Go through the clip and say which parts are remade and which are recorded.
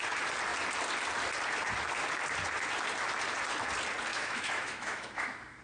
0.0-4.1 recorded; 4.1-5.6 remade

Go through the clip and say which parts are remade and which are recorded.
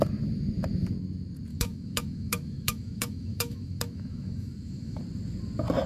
0.0-1.5 recorded; 1.5-5.0 remade; 5.0-5.9 recorded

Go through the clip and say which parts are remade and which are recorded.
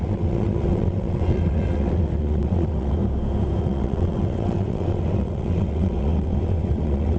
0.0-3.0 remade; 3.0-3.6 recorded; 3.6-7.2 remade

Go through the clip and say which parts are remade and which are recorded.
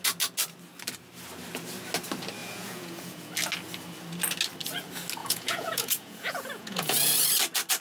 0.0-2.4 recorded; 2.4-3.3 remade; 3.3-5.2 recorded; 5.2-7.1 remade; 7.1-7.8 recorded